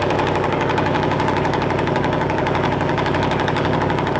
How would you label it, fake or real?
fake